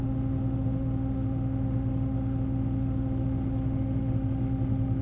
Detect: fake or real fake